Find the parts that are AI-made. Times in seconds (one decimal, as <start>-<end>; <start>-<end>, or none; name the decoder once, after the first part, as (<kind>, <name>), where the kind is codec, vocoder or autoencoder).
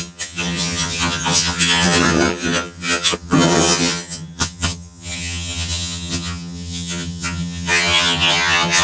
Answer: 0.0-8.8 (vocoder, HiFi-GAN)